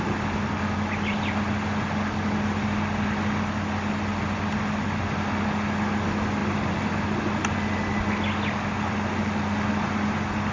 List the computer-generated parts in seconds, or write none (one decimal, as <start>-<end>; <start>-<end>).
none